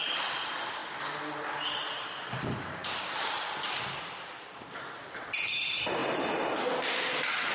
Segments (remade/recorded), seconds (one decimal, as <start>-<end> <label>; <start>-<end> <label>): 0.0-2.8 recorded; 2.8-4.9 remade; 4.9-7.5 recorded